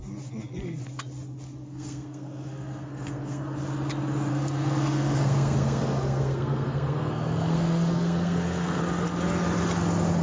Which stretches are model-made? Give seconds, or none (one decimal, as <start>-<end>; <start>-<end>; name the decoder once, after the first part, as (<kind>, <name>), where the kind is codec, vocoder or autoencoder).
1.6-3.4 (codec, SNAC); 4.3-8.8